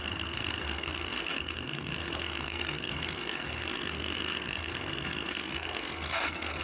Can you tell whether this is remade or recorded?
remade